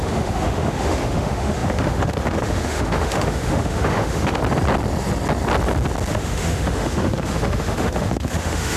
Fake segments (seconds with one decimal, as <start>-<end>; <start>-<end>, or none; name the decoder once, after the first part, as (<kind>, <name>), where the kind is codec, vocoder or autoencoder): 0.0-4.4 (autoencoder, DAC-VAE); 6.1-8.8